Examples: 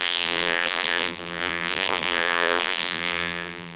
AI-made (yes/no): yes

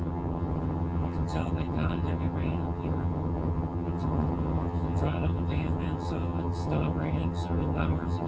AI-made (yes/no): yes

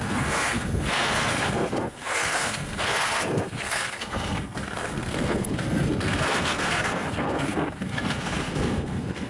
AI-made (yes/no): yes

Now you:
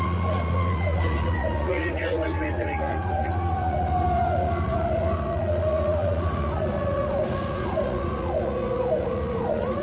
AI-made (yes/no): yes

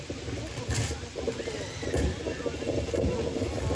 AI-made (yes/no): no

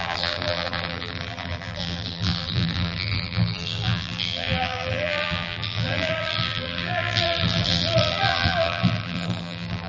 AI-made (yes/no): yes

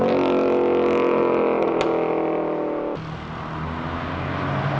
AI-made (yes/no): no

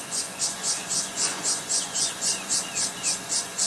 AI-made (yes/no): yes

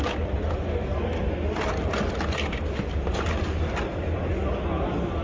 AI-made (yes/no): no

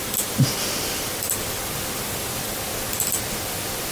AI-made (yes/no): no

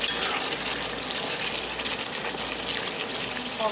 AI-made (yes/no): no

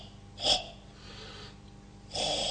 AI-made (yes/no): no